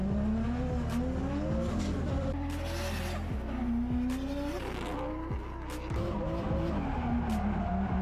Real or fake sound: real